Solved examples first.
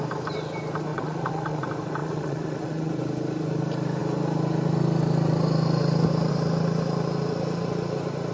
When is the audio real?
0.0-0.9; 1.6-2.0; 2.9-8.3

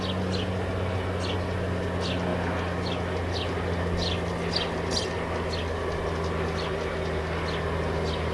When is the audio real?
0.0-8.3

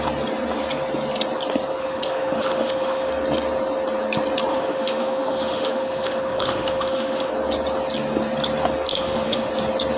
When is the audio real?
0.0-1.8; 3.1-4.5; 7.3-8.9; 9.5-10.0

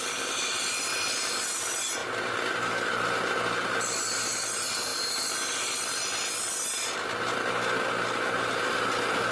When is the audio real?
0.0-9.3

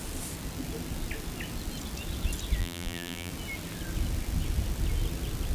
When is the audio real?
0.0-2.6; 3.3-5.5

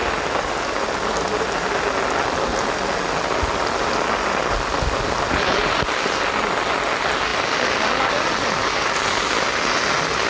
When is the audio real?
0.0-10.3